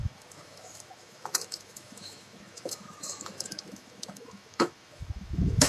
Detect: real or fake fake